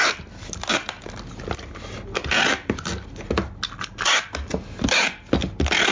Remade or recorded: recorded